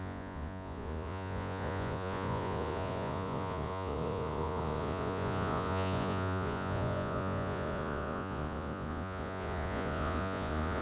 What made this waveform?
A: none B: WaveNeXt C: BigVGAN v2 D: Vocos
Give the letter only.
D